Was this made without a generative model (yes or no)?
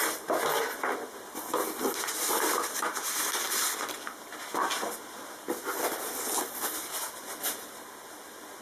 yes